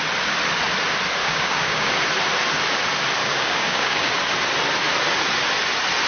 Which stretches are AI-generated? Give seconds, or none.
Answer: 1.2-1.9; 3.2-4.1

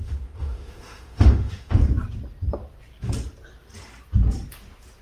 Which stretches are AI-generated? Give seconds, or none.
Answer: 0.0-1.8

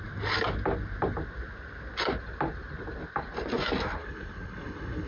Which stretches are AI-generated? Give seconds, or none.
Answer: 4.0-5.1

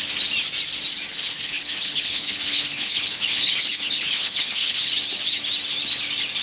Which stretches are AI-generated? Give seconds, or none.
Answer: 1.1-4.9

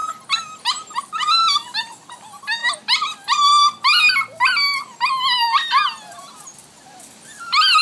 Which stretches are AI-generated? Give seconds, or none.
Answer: none

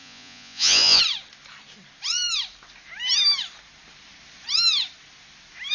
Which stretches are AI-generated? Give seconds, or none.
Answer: 0.0-1.0

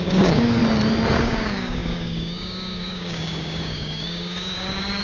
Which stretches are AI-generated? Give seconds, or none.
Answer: 0.0-0.6; 1.2-5.0